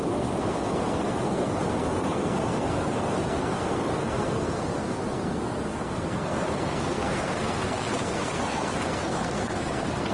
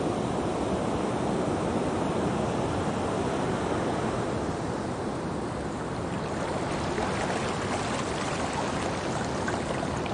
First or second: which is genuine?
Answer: second